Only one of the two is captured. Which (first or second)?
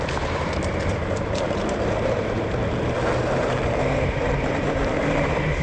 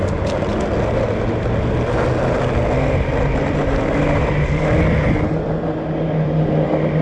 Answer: second